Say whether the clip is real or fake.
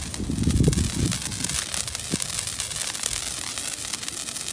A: real